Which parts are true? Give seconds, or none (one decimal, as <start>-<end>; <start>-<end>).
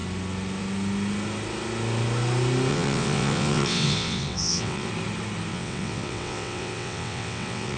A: 0.0-2.7; 4.9-5.5